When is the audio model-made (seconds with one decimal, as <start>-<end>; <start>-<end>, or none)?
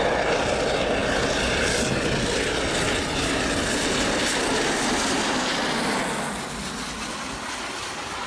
none